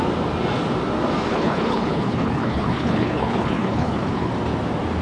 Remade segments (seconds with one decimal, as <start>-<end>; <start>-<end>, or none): 1.3-4.3